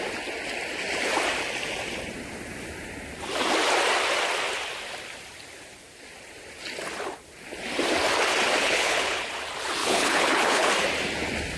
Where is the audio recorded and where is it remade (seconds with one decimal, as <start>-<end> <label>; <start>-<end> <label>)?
0.0-8.6 recorded; 8.6-9.3 remade; 9.3-9.8 recorded; 9.8-10.7 remade; 10.7-11.6 recorded